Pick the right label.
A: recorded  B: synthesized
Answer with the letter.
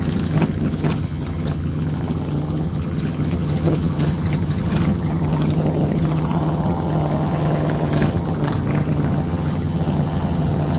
B